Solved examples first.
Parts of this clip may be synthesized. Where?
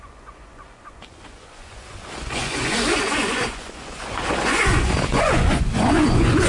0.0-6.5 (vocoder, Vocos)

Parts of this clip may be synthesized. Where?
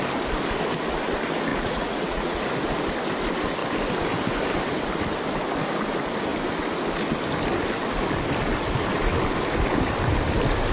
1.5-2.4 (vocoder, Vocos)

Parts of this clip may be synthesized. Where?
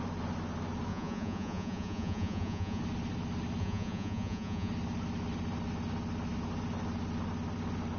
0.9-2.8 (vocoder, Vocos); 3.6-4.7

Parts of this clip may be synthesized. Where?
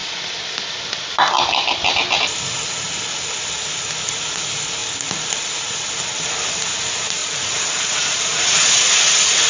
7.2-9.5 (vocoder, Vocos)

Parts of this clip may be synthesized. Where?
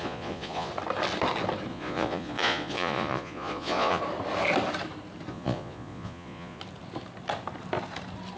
0.0-0.7 (vocoder, Vocos); 1.7-4.0; 5.3-6.6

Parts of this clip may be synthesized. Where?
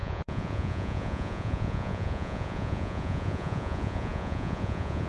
0.0-5.1 (vocoder, Vocos)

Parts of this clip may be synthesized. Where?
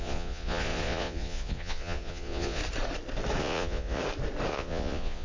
0.0-2.6 (vocoder, Vocos); 3.4-4.0; 4.5-5.2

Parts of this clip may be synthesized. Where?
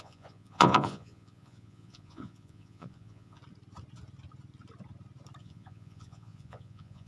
0.0-3.4 (vocoder, Vocos); 5.4-7.1